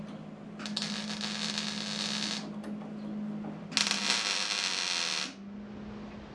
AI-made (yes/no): no